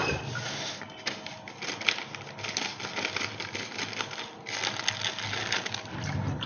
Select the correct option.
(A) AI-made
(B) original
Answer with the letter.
B